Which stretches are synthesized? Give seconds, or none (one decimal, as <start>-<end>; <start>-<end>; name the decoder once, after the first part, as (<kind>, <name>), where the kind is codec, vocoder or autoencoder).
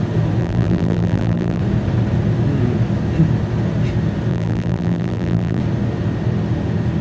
0.4-1.6 (vocoder, BigVGAN v2); 4.3-5.6